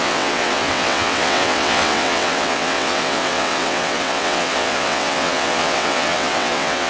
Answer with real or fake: fake